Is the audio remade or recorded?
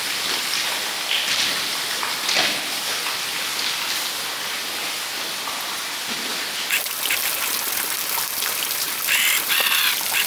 recorded